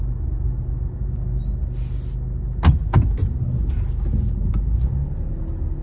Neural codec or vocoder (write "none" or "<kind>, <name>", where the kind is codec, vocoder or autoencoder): none